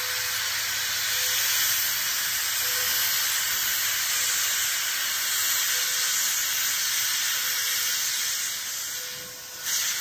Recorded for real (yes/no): yes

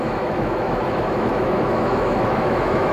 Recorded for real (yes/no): no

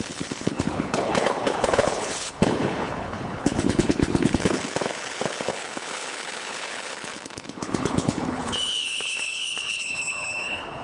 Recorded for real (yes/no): no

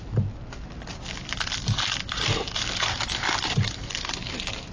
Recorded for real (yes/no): yes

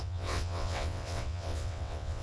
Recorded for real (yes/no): no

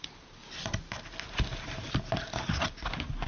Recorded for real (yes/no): yes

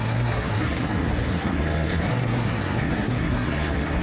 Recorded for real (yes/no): no